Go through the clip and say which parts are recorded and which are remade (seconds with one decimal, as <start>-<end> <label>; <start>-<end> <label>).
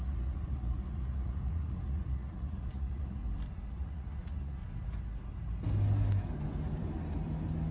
0.0-3.2 remade; 3.2-3.7 recorded; 3.7-4.6 remade; 4.6-7.7 recorded